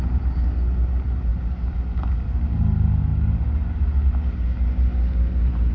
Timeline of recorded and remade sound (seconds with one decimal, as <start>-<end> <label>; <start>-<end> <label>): 0.0-5.7 recorded